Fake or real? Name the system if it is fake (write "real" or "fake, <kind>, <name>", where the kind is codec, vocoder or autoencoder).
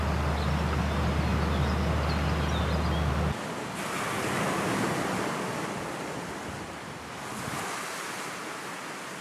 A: real